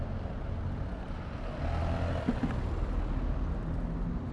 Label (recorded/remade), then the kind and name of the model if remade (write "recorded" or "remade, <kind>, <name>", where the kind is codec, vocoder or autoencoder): recorded